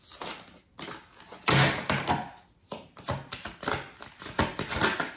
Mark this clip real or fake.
real